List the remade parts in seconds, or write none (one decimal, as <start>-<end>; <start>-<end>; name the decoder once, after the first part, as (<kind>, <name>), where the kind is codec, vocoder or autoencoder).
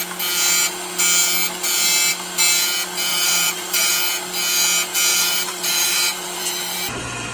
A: 3.1-3.9 (vocoder, BigVGAN v2); 5.1-7.3